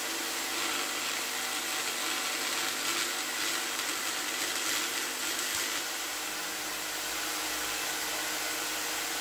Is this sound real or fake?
real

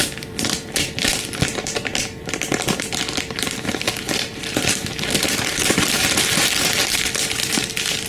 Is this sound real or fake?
fake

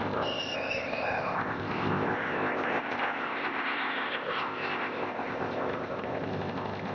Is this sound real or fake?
fake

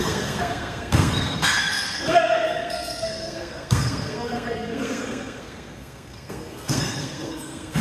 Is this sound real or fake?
fake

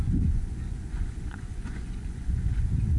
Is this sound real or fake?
fake